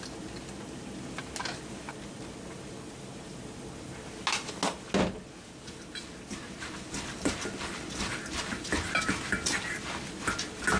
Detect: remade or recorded recorded